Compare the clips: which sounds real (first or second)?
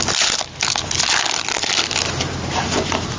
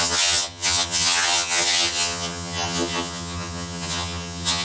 first